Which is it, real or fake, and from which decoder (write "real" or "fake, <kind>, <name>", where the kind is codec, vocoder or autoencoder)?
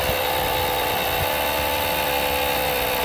real